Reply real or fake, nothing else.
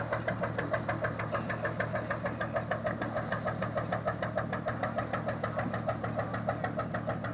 real